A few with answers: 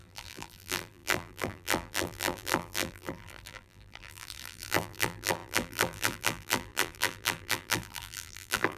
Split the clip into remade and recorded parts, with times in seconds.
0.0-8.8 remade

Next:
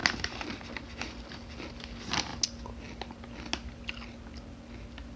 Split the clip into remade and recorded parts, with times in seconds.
0.0-5.2 recorded